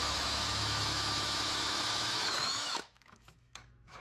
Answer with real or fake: fake